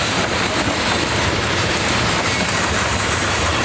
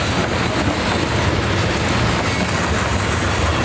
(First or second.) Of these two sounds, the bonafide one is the second